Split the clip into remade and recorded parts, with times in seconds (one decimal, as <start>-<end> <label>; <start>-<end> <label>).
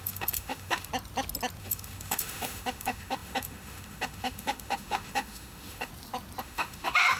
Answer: 0.0-0.9 remade; 0.9-1.6 recorded; 1.6-5.9 remade; 5.9-6.4 recorded; 6.4-7.2 remade